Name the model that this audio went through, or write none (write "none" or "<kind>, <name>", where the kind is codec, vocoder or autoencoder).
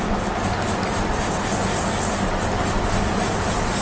none